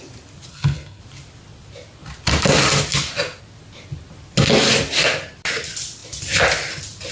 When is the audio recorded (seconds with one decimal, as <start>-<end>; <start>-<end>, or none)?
0.0-0.5; 1.0-7.1

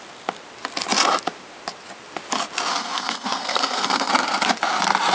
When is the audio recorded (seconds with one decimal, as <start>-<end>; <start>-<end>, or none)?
0.0-2.7; 4.1-5.1